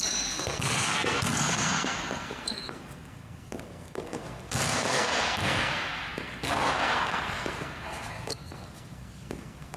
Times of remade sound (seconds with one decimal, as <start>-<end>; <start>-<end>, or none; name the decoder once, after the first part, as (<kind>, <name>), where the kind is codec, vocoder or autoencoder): 0.0-9.8 (codec, SNAC)